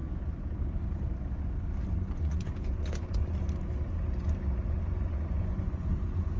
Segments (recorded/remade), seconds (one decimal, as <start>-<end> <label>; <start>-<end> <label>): 0.0-1.9 recorded; 1.9-3.2 remade; 3.2-5.1 recorded; 5.1-6.4 remade